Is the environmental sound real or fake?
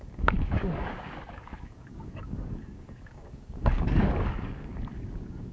fake